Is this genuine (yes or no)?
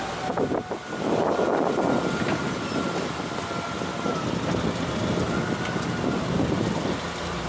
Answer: yes